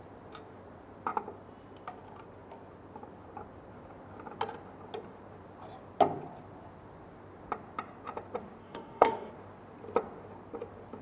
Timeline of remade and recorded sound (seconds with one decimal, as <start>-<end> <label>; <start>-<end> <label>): 0.0-8.6 recorded; 8.6-9.3 remade; 9.3-11.0 recorded